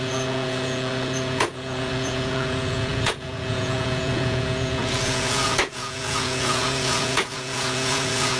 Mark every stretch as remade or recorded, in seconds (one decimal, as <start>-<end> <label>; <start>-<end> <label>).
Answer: 0.0-8.4 remade